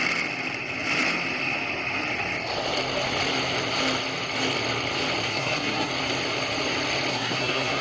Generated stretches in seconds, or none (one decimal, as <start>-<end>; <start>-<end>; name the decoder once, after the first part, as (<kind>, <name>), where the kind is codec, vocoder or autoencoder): 5.3-5.9 (codec, SNAC); 7.1-7.8